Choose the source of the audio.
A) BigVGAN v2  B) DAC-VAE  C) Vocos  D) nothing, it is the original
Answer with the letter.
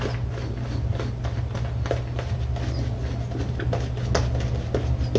D